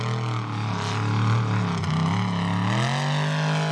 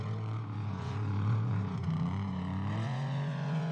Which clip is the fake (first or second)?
second